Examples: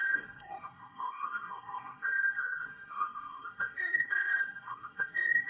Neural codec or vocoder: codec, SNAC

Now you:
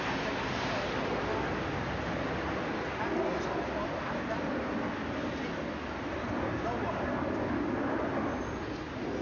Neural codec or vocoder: none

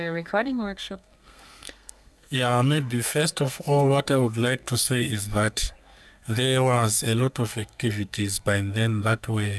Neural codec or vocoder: codec, SNAC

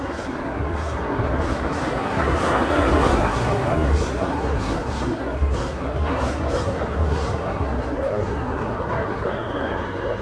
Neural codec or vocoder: codec, SNAC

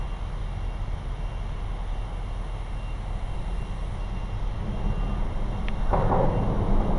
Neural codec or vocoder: none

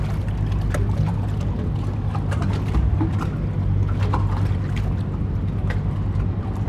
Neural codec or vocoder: none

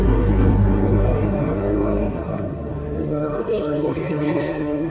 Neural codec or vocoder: codec, SNAC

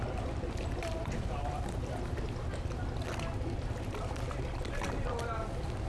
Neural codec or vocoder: none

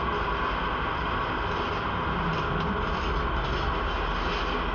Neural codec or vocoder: none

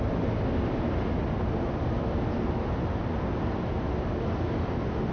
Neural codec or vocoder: none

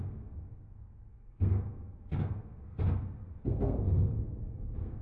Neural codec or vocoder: codec, SNAC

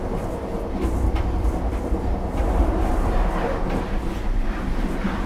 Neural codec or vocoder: none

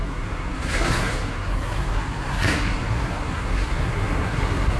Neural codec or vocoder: codec, SNAC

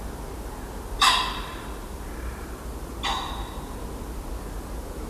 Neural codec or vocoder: none